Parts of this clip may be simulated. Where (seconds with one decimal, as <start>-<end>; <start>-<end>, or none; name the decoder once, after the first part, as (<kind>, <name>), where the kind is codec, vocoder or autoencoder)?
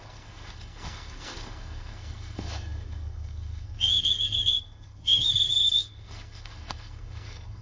0.0-7.6 (codec, SNAC)